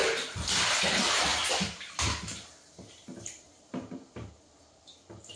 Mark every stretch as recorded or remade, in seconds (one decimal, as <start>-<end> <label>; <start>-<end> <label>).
0.0-0.7 recorded; 0.7-1.3 remade; 1.3-3.2 recorded; 3.2-5.4 remade